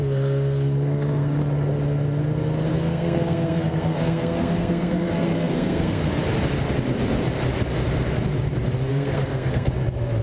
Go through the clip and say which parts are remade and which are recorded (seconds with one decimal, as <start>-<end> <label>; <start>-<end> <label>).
0.0-1.4 remade; 1.4-2.7 recorded; 2.7-6.1 remade; 6.1-8.9 recorded; 8.9-9.7 remade; 9.7-10.2 recorded